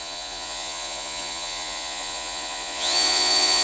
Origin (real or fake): fake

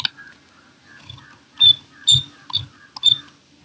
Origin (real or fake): real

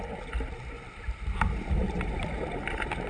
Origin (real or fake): real